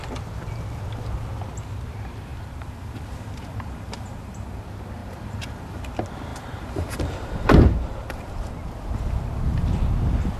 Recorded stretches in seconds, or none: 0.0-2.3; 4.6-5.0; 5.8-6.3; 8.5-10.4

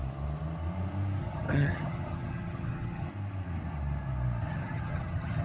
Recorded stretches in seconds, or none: 0.0-1.2; 3.1-4.4

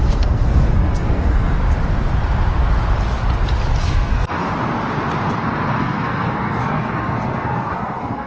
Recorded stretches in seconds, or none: 1.6-3.8; 4.5-5.7

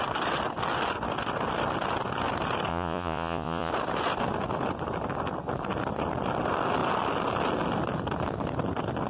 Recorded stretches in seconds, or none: 0.0-2.7; 3.7-9.1

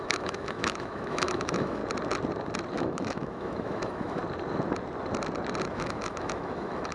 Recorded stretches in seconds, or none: 1.8-2.7; 4.2-5.7

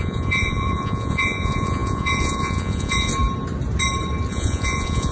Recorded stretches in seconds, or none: 3.1-4.3

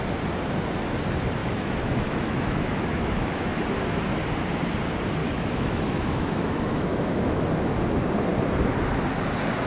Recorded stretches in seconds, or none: 0.0-1.4; 3.6-5.2; 7.5-9.7

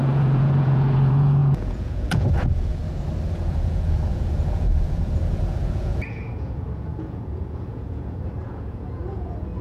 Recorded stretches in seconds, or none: 2.8-3.3